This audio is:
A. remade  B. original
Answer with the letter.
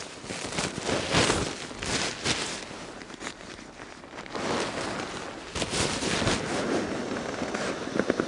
B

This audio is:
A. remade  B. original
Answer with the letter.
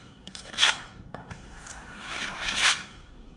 A